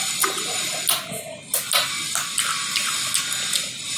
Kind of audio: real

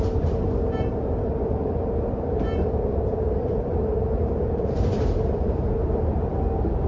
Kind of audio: fake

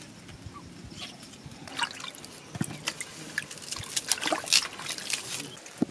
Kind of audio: real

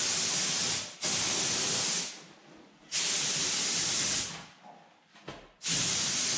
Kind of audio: real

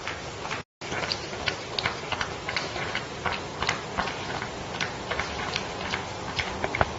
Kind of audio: real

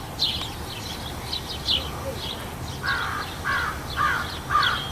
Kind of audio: real